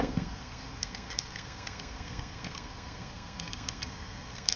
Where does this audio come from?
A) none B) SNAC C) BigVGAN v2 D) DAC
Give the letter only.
B